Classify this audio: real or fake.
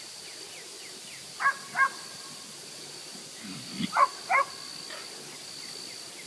real